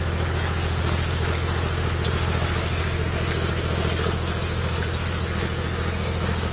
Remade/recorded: recorded